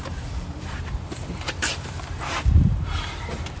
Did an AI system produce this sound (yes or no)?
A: yes